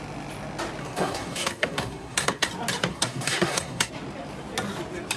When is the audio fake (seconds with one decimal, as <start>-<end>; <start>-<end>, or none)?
0.8-2.5; 2.9-3.9

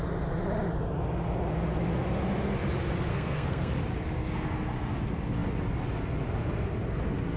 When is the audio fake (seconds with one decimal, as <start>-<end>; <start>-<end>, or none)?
3.1-3.7

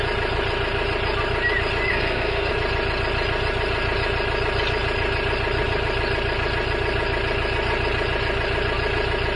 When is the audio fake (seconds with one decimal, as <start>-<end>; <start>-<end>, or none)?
1.9-2.5